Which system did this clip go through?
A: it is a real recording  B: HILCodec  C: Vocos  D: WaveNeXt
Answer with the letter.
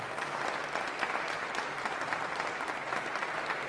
A